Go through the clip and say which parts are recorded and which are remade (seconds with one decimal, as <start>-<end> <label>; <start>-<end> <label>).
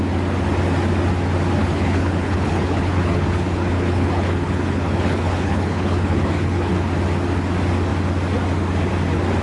0.0-1.6 recorded; 1.6-6.7 remade; 6.7-9.4 recorded